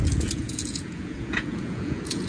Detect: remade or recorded remade